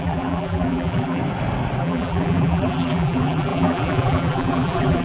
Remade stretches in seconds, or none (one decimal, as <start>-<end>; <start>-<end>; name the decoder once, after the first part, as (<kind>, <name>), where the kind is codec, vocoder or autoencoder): 0.0-1.2 (vocoder, BigVGAN v2); 1.8-5.0